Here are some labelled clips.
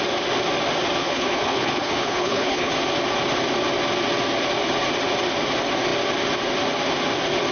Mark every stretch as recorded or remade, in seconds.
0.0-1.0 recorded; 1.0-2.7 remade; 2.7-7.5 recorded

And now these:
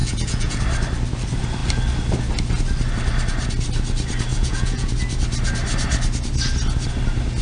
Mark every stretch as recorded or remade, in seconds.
0.0-0.6 remade; 0.6-4.3 recorded; 4.3-4.9 remade; 4.9-7.4 recorded